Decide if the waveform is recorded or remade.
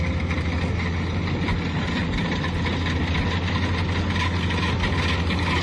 recorded